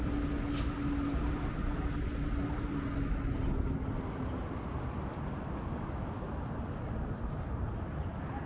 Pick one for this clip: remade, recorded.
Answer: recorded